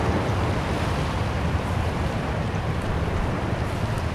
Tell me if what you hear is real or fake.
fake